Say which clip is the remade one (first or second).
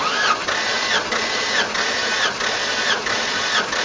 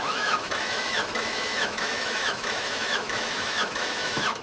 second